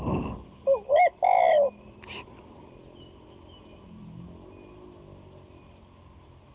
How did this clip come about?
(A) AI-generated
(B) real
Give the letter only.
B